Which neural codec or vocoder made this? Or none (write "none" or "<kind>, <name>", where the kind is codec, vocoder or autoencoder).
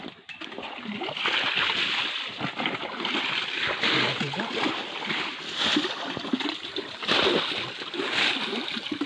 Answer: none